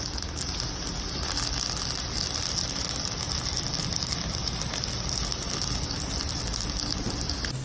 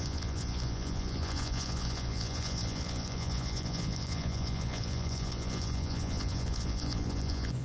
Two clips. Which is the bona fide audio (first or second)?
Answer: first